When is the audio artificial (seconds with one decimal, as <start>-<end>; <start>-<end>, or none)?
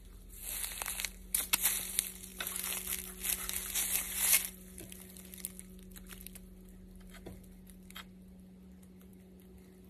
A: none